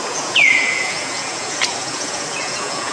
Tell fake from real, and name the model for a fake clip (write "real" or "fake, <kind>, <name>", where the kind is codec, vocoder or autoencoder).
fake, vocoder, Vocos